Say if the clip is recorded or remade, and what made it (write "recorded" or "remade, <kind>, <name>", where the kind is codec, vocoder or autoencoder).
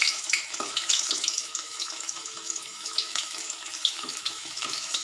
remade, autoencoder, DAC-VAE